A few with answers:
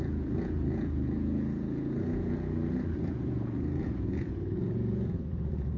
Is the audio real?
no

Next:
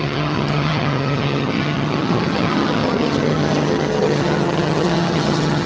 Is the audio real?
no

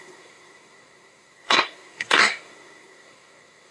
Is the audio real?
no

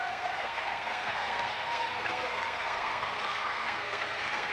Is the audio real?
no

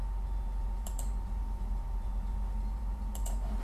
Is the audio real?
no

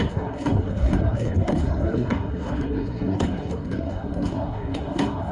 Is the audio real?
no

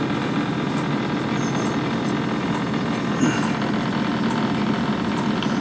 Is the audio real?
yes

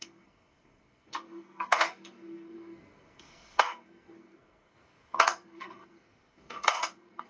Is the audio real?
no